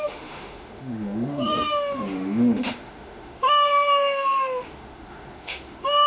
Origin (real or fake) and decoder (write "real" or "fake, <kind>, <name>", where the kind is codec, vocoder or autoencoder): fake, autoencoder, DAC-VAE